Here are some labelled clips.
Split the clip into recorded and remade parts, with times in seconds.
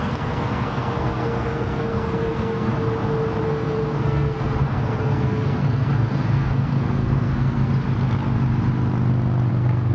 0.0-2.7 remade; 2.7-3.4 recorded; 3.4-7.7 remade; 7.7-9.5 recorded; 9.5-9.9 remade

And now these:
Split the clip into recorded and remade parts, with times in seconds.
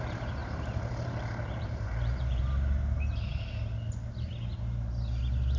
0.0-0.4 recorded; 0.4-2.4 remade; 2.4-5.6 recorded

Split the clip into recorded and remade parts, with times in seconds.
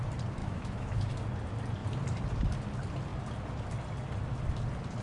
0.0-0.4 recorded; 0.4-1.2 remade; 1.2-5.0 recorded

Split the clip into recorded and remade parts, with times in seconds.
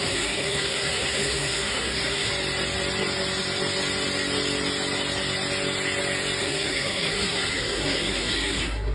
0.0-2.3 remade; 2.3-6.4 recorded; 6.4-8.9 remade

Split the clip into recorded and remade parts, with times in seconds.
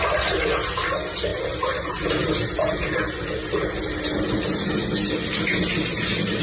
0.0-6.4 recorded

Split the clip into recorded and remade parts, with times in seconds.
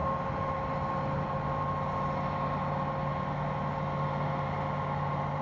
0.0-5.4 recorded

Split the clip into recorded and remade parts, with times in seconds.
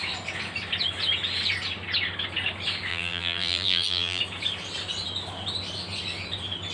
0.0-2.9 recorded; 2.9-4.2 remade; 4.2-6.7 recorded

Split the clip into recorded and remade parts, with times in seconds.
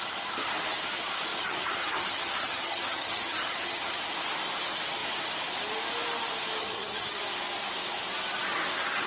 0.0-1.3 recorded; 1.3-4.0 remade; 4.0-6.6 recorded; 6.6-7.2 remade; 7.2-9.1 recorded